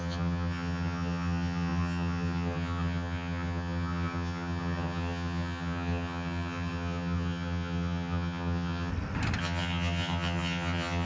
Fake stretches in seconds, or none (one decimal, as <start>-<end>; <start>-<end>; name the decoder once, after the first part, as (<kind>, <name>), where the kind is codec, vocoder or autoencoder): 0.0-8.9 (vocoder, HiFi-GAN); 9.4-11.1